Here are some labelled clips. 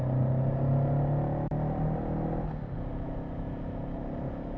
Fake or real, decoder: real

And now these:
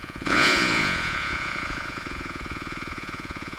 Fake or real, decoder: fake, vocoder, Vocos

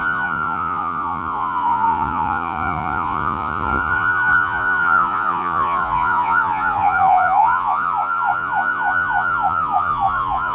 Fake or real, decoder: fake, vocoder, Vocos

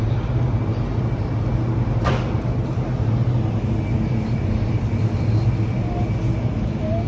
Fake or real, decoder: real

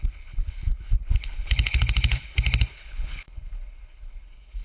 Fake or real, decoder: fake, codec, HILCodec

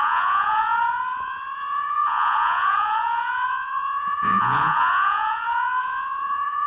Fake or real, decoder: fake, vocoder, Vocos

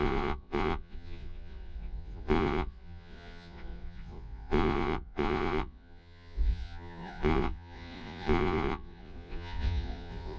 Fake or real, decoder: fake, vocoder, Vocos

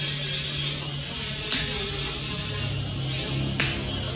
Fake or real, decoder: real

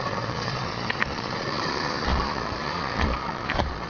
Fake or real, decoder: fake, vocoder, Vocos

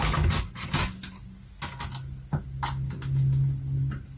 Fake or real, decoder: real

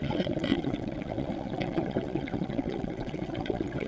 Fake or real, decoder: fake, vocoder, WaveNeXt